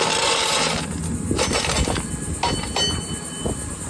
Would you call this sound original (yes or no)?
yes